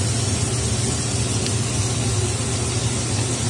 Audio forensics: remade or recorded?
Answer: recorded